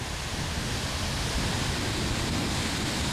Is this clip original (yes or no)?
yes